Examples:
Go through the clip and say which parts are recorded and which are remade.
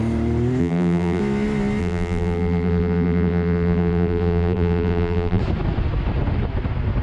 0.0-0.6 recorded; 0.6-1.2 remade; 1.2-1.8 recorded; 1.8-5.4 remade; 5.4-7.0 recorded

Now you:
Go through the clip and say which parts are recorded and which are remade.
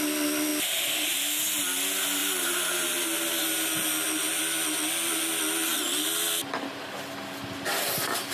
0.0-2.2 recorded; 2.2-4.4 remade; 4.4-8.3 recorded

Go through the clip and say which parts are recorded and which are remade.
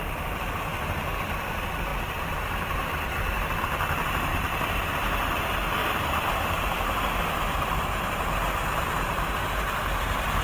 0.0-5.8 recorded; 5.8-9.3 remade; 9.3-10.4 recorded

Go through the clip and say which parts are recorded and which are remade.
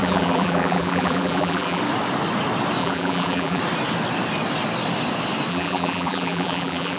0.0-1.8 remade; 1.8-2.8 recorded; 2.8-3.6 remade; 3.6-5.5 recorded; 5.5-7.0 remade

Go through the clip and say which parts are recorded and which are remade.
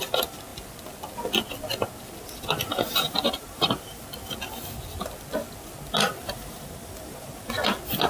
0.0-2.9 recorded; 2.9-4.0 remade; 4.0-6.2 recorded; 6.2-7.6 remade; 7.6-8.1 recorded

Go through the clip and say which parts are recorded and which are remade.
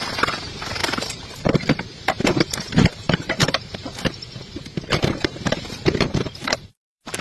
0.0-7.2 remade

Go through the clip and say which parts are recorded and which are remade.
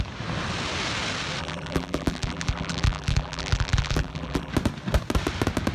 0.0-1.4 recorded; 1.4-4.5 remade; 4.5-5.7 recorded